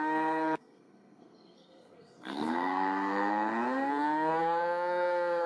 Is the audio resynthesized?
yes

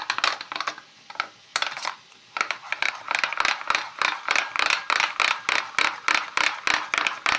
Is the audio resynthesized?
no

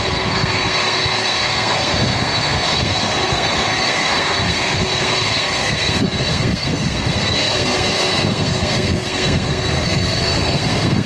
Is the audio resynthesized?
yes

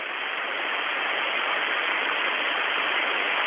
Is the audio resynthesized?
no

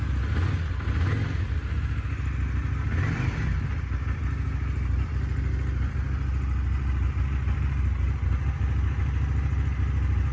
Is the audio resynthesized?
no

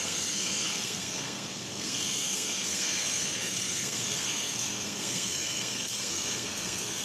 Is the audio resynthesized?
yes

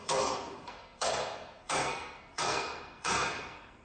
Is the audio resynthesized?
yes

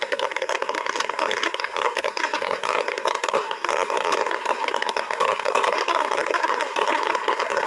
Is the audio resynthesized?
yes